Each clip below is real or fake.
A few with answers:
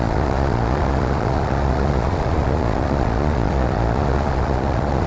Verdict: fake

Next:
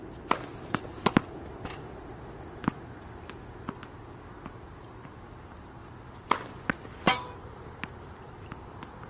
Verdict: real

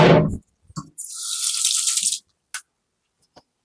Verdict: real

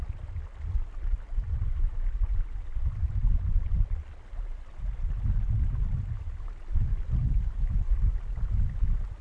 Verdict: real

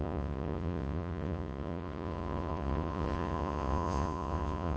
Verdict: fake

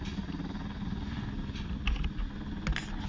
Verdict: real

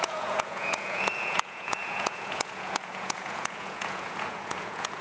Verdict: fake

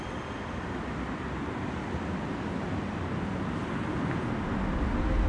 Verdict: real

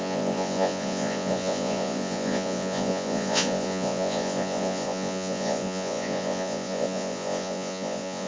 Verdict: fake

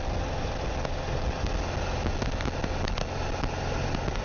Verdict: real